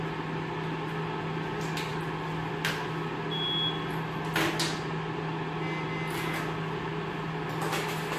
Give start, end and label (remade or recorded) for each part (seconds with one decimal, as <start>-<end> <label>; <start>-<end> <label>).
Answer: 0.0-8.2 recorded